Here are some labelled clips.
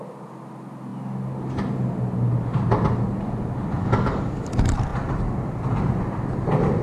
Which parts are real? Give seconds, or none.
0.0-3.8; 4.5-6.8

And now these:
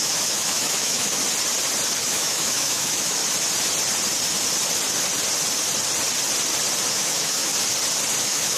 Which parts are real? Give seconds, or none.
1.2-2.0; 3.2-6.9; 7.5-8.2

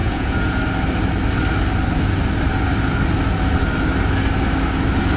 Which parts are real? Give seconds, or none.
0.6-5.2

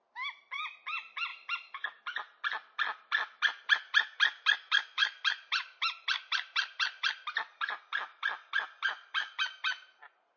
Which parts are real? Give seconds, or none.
0.0-1.3; 2.0-5.0; 7.8-10.4

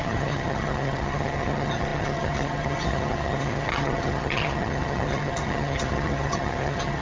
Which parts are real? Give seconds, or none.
none